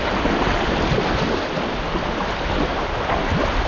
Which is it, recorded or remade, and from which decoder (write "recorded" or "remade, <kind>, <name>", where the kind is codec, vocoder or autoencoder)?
recorded